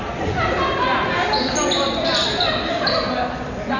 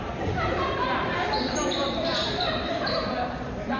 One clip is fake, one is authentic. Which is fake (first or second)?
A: second